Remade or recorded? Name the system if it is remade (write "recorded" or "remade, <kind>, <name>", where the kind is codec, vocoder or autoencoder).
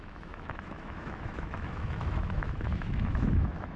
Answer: remade, autoencoder, DAC-VAE